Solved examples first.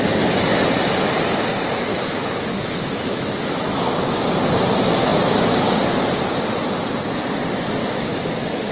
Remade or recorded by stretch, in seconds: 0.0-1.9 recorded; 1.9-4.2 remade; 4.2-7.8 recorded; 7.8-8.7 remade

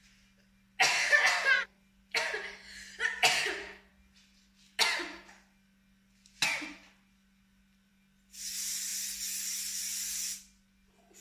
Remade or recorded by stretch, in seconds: 0.0-11.2 recorded

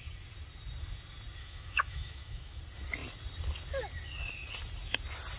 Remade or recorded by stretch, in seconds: 0.0-1.4 recorded; 1.4-2.6 remade; 2.6-5.4 recorded

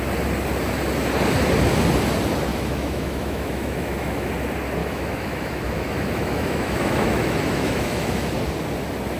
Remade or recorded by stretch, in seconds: 0.0-2.5 recorded; 2.5-4.3 remade; 4.3-4.8 recorded; 4.8-8.3 remade; 8.3-9.2 recorded

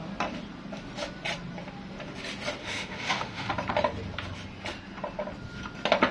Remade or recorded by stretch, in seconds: 0.0-2.6 recorded; 2.6-3.5 remade; 3.5-6.1 recorded

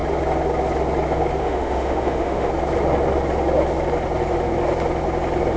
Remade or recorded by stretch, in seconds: 0.0-1.4 recorded; 1.4-2.5 remade; 2.5-5.6 recorded